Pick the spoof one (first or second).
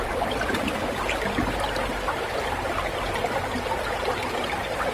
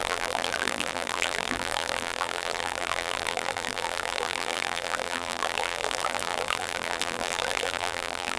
second